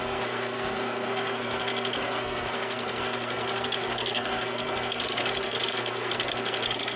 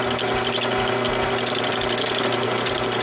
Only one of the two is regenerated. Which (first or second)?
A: first